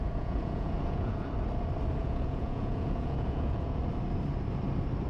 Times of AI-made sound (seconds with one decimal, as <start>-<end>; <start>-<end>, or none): 0.0-1.3; 2.0-3.8